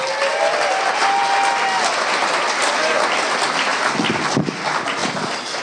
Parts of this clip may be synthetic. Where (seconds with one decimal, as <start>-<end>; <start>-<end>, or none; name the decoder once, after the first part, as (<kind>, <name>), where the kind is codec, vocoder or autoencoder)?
none